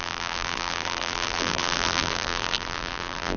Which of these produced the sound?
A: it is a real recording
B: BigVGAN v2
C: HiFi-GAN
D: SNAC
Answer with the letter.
B